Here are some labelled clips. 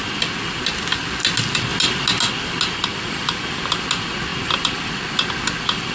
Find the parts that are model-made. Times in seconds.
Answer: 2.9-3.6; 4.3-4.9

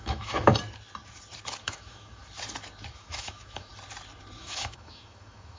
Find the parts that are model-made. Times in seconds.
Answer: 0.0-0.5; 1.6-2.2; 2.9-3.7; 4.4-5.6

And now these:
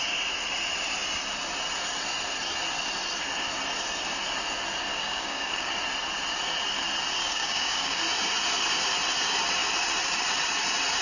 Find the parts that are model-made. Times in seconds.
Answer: 4.9-5.7; 7.2-8.0

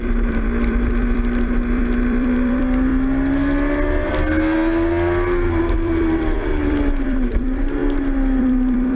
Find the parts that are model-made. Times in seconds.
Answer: 0.0-2.9; 5.7-7.8; 8.4-9.0